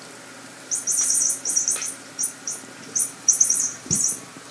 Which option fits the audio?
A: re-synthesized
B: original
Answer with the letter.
A